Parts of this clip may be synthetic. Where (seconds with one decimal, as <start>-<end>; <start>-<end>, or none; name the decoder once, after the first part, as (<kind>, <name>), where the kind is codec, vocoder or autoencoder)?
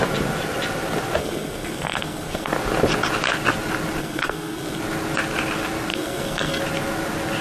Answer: 1.2-2.5 (codec, SNAC); 4.0-4.8; 5.9-6.6